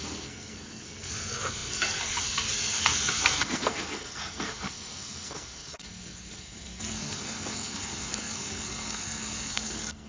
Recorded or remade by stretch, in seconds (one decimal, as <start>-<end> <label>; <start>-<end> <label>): 0.0-10.1 remade